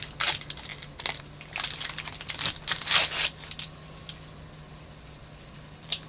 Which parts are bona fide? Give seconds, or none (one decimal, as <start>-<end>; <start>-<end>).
0.0-6.1